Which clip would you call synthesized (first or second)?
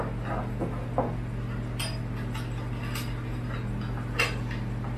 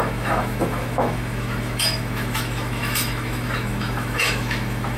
second